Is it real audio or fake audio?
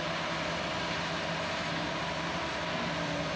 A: real